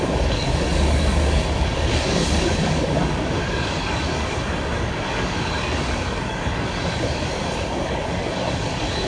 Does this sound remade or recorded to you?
remade